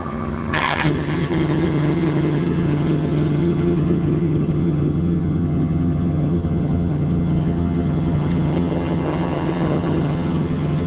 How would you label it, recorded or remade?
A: remade